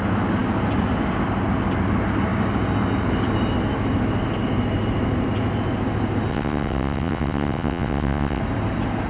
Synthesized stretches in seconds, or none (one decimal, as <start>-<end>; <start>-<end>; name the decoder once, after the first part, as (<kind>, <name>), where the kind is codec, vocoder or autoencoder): 6.3-8.4 (vocoder, WaveNeXt)

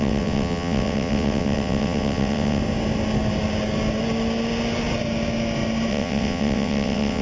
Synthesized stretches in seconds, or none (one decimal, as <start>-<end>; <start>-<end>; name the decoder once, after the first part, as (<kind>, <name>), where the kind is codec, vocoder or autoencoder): 0.0-2.6 (vocoder, WaveNeXt); 5.9-7.2

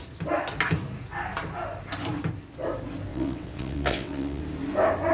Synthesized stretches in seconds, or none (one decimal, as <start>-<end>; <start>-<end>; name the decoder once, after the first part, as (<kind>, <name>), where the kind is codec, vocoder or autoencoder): 3.1-4.4 (vocoder, WaveNeXt)